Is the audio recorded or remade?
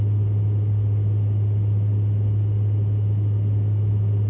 recorded